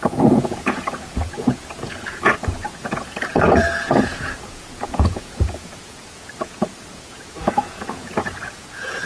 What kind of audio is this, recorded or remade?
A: remade